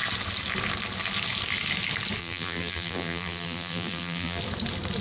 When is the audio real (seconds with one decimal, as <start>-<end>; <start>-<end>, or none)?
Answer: 0.0-2.2; 4.4-5.0